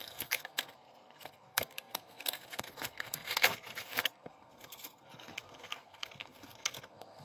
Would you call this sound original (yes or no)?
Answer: no